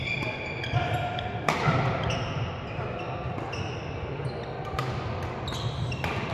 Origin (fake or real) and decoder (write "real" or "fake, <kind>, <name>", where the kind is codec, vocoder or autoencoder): real